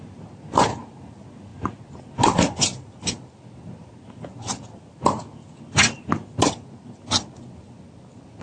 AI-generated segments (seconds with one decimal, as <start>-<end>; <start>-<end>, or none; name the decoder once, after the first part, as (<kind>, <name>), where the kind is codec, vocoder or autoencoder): none